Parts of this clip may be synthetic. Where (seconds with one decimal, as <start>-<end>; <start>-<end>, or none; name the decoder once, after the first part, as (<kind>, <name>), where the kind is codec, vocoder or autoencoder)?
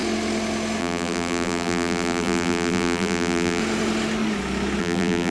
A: 0.8-3.6 (vocoder, BigVGAN v2); 4.8-5.3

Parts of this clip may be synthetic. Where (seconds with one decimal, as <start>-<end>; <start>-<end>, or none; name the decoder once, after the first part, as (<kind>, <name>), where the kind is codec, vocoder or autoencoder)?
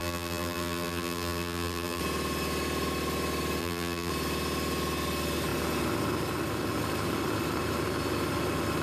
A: 0.0-2.0 (vocoder, BigVGAN v2); 3.6-4.1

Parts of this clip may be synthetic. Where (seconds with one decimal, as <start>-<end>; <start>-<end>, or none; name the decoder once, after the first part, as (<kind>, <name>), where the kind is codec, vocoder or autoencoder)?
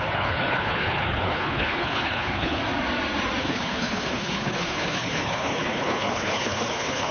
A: 0.0-2.6 (codec, HILCodec); 3.4-7.1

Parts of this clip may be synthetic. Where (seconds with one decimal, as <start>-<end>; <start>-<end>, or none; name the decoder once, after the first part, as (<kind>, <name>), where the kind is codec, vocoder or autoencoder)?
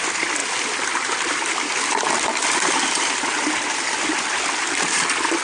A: none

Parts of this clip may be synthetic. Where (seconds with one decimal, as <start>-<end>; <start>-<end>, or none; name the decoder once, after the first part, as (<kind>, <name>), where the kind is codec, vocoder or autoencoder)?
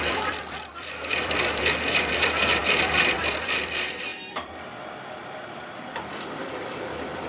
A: 0.0-7.3 (vocoder, BigVGAN v2)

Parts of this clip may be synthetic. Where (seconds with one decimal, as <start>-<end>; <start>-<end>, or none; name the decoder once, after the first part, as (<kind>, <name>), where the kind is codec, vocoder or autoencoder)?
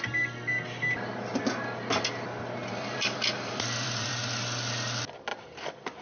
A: 2.6-4.1 (vocoder, BigVGAN v2); 5.3-6.0